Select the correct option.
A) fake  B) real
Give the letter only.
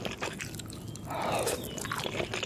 B